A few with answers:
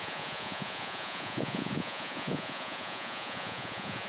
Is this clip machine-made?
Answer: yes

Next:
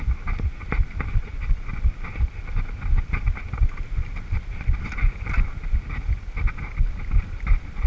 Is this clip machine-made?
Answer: no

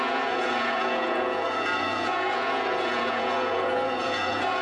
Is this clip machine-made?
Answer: yes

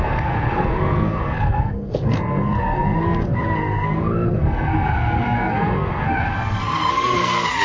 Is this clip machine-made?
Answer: yes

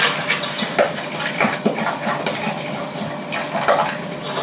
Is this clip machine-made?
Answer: yes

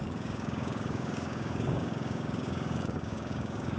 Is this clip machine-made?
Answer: yes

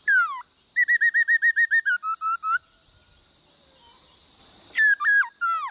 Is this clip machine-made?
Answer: no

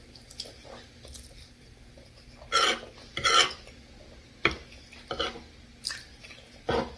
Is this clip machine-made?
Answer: no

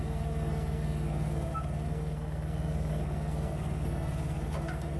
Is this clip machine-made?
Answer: yes